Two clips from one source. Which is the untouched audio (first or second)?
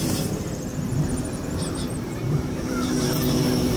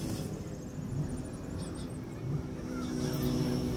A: second